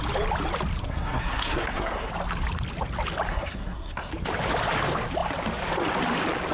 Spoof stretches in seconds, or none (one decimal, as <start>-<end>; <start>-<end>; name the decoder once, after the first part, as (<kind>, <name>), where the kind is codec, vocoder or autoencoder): 0.8-2.1 (codec, SNAC); 3.3-4.1